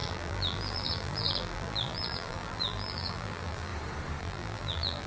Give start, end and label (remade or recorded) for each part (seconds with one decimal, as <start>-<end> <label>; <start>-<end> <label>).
0.0-3.7 remade; 3.7-4.2 recorded; 4.2-5.1 remade